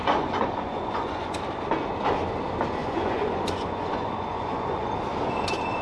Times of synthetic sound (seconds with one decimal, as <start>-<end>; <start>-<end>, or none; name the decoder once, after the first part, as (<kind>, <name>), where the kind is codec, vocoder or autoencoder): 0.0-1.4 (vocoder, Vocos); 2.8-4.9